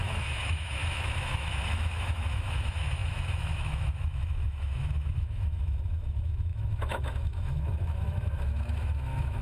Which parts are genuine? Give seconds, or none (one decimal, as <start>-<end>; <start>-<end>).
none